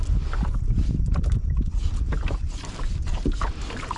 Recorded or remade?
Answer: recorded